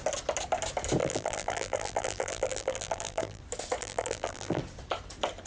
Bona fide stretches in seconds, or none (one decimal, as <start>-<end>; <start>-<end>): 0.0-1.0; 3.4-3.8; 4.6-5.5